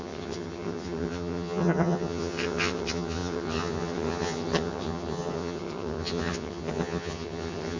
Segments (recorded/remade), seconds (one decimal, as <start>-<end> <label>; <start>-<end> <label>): 0.0-7.8 remade